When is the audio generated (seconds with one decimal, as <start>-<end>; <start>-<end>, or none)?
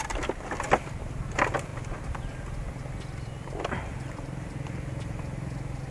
none